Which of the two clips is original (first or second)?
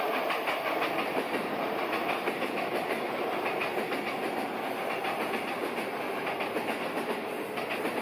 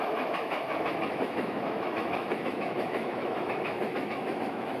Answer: first